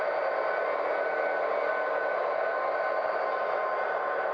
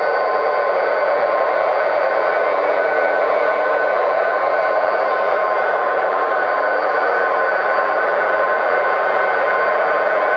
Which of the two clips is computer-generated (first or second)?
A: second